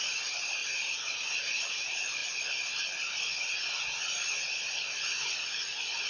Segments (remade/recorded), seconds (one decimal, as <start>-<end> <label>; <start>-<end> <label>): 0.0-0.6 remade; 0.6-1.5 recorded; 1.5-2.2 remade; 2.2-6.1 recorded